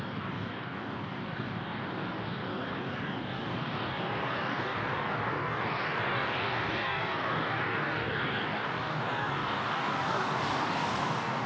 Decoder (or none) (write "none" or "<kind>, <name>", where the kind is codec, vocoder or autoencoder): codec, DAC